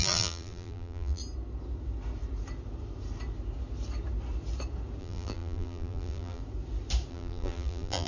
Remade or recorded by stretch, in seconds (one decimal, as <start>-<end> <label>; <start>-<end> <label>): 0.0-1.2 remade; 1.2-5.0 recorded; 5.0-6.4 remade; 6.4-7.1 recorded; 7.1-8.1 remade